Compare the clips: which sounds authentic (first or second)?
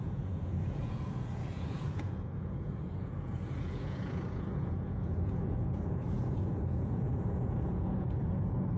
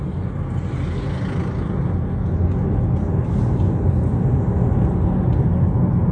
second